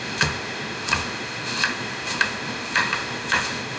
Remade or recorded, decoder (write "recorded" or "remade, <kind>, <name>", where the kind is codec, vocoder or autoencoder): remade, autoencoder, DAC-VAE